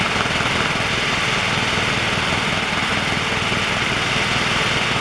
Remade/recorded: recorded